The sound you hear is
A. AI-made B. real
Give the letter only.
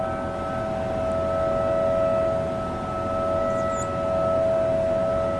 B